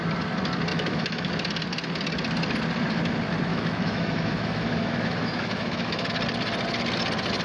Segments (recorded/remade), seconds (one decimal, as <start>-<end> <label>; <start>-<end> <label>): 0.0-0.7 recorded; 0.7-1.3 remade; 1.3-3.5 recorded; 3.5-6.1 remade; 6.1-7.4 recorded